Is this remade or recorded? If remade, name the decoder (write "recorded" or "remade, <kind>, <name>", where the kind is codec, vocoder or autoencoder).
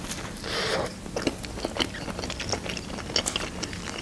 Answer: recorded